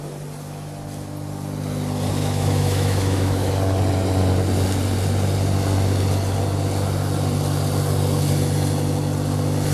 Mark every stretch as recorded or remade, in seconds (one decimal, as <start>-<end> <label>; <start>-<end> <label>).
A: 0.0-2.2 recorded; 2.2-3.5 remade; 3.5-9.7 recorded